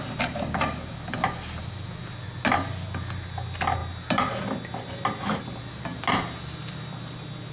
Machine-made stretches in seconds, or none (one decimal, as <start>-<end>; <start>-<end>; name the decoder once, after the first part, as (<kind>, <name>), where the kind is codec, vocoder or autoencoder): none